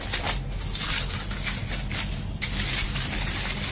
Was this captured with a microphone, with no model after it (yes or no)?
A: yes